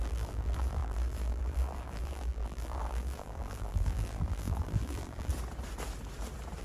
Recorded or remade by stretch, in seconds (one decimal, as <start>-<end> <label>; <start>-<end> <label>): 0.0-5.3 remade; 5.3-6.6 recorded